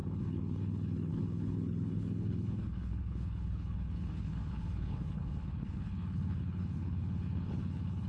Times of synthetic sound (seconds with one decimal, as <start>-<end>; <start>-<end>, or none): 0.0-8.1

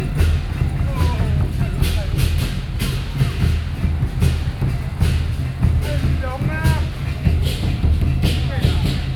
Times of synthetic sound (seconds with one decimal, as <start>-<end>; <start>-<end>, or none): 7.4-8.0

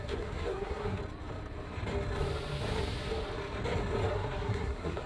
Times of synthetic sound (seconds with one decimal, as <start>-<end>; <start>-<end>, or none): 0.0-1.0; 4.1-5.1

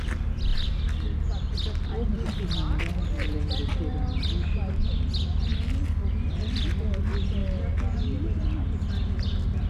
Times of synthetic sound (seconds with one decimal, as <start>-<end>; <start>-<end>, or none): none

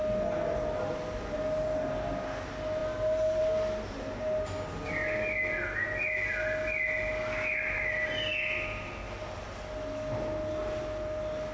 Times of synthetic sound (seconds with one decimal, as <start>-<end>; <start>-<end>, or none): none